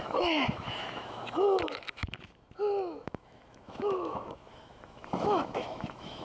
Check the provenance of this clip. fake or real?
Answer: fake